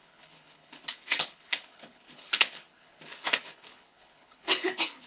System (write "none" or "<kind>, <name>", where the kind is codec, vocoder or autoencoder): codec, HILCodec